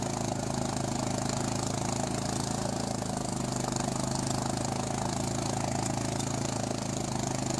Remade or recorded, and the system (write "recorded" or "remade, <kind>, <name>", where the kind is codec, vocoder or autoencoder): recorded